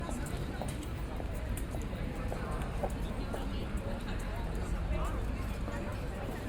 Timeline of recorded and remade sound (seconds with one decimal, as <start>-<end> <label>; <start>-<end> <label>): 0.0-2.8 remade; 2.8-3.6 recorded; 3.6-4.9 remade; 4.9-6.5 recorded